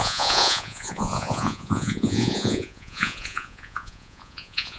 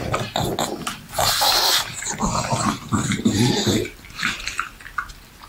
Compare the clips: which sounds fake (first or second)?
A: first